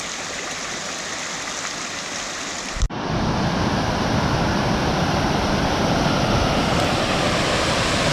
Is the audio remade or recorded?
recorded